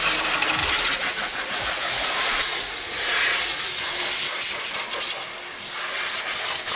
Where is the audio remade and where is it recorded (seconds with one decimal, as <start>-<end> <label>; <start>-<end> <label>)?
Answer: 0.0-0.6 recorded; 0.6-3.7 remade; 3.7-6.8 recorded